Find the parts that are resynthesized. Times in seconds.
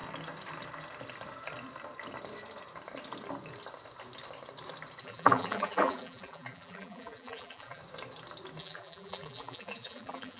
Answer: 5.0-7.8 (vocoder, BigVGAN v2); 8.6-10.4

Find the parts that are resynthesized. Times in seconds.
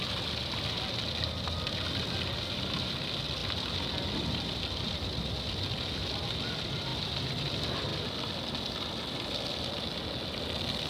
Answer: none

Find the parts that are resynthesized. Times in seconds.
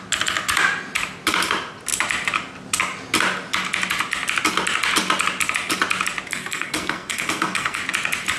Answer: 6.3-7.8 (codec, SNAC)